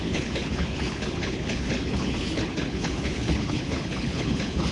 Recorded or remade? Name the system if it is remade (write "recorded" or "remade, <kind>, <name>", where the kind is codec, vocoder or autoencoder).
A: remade, codec, HILCodec